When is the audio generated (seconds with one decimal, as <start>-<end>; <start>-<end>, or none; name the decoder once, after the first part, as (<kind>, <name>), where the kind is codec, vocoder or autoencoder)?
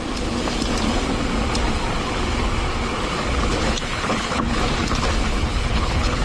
3.6-4.6 (codec, HILCodec); 5.3-6.2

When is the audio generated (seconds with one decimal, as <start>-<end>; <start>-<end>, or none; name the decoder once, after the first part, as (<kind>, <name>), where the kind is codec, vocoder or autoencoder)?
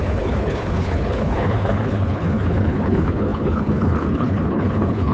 0.0-5.1 (codec, HILCodec)